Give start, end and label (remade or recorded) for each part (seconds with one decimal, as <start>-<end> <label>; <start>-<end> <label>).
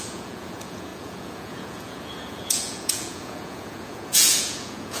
0.0-5.0 remade